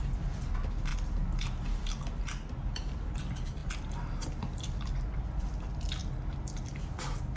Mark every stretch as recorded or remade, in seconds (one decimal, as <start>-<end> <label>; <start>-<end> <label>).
0.0-7.4 recorded